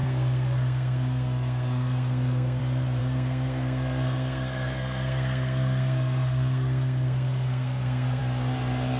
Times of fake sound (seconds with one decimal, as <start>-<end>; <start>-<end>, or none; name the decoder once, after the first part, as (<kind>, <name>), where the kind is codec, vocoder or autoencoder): 0.0-2.6 (codec, SNAC); 3.0-8.2